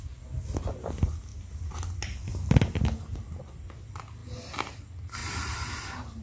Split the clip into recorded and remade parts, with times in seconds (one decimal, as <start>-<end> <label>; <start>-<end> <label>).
0.0-5.2 recorded; 5.2-5.7 remade; 5.7-6.2 recorded